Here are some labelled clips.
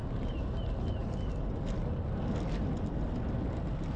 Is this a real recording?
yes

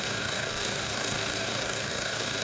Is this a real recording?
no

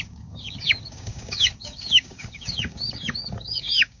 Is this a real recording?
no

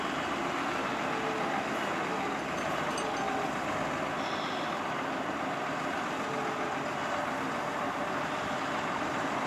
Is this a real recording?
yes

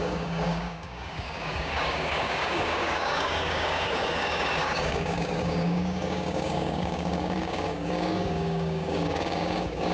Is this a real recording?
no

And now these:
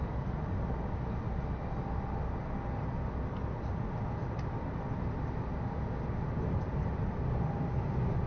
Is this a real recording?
yes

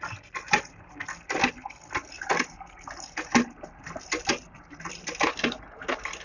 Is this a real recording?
yes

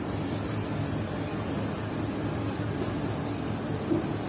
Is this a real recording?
yes